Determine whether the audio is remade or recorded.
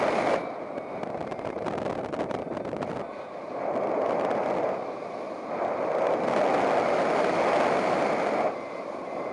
recorded